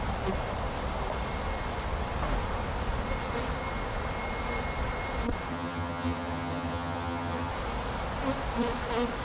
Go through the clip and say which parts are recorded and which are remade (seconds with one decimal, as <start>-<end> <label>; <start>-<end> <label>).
0.0-5.5 recorded; 5.5-7.5 remade; 7.5-9.2 recorded